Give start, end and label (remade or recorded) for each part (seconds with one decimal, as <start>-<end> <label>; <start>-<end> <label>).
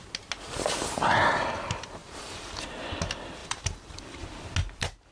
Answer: 0.0-2.0 recorded; 2.0-2.6 remade; 2.6-3.4 recorded; 3.4-4.2 remade; 4.2-5.1 recorded